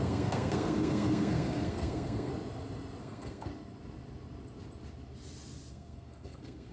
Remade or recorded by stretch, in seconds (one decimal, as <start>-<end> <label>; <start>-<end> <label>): 0.0-2.3 remade; 2.3-3.0 recorded; 3.0-3.5 remade; 3.5-5.7 recorded; 5.7-6.7 remade